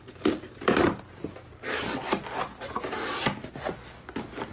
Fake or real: real